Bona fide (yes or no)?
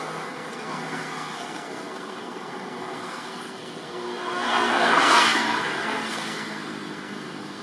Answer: no